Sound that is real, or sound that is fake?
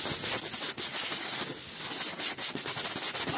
real